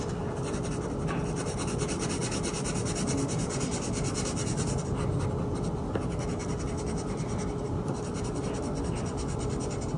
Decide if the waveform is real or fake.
real